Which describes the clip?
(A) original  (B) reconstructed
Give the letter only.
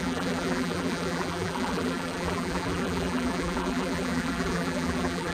B